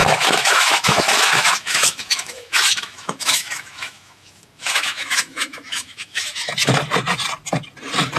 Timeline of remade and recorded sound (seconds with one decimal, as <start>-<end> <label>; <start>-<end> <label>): 0.0-6.5 remade; 6.5-8.2 recorded